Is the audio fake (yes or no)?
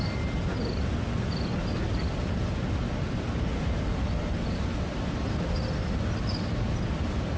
no